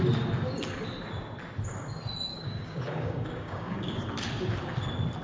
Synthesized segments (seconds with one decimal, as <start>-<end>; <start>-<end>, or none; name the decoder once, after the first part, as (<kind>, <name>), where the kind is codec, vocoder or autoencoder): 2.3-4.0 (codec, DAC)